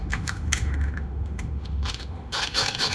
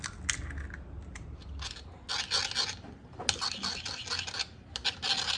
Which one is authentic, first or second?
second